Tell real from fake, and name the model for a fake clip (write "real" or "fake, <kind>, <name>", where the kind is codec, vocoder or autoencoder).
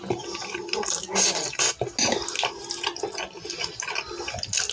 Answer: real